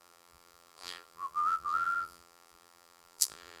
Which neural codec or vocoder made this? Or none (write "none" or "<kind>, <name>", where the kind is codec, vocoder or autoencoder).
vocoder, BigVGAN v2